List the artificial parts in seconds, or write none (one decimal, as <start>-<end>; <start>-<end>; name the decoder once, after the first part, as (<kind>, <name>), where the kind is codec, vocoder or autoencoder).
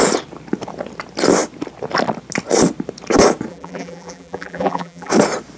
3.5-5.1 (vocoder, BigVGAN v2)